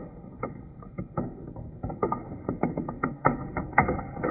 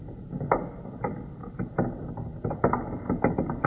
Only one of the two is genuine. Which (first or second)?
second